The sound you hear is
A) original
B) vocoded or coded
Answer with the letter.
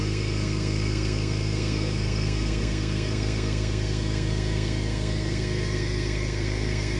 B